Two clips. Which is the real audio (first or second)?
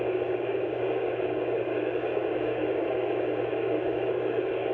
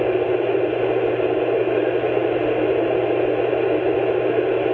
second